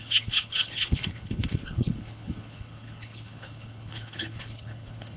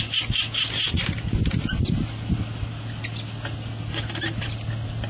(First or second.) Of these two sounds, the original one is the second